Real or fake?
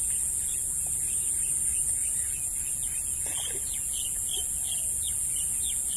real